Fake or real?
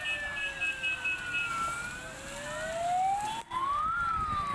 real